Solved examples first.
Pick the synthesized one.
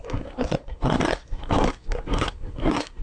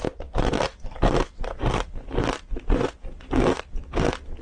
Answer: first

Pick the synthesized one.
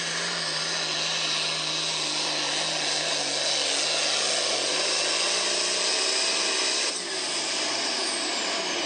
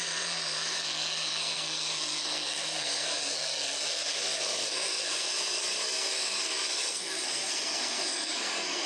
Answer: second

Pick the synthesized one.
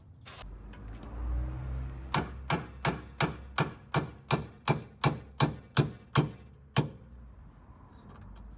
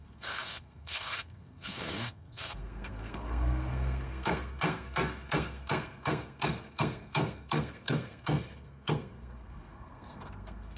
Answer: second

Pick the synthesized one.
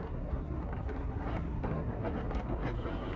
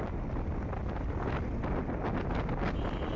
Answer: first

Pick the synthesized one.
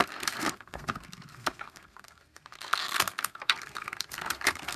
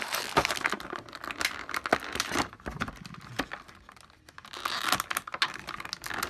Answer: first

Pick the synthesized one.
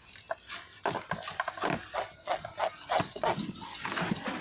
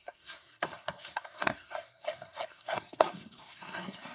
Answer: second